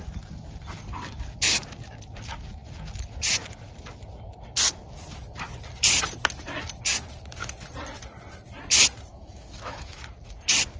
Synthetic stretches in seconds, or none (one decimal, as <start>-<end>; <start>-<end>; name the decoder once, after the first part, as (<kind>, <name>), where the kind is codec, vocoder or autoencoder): 9.1-10.0 (autoencoder, DAC-VAE)